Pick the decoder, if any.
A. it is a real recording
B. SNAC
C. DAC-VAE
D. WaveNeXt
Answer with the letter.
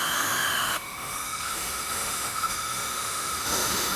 C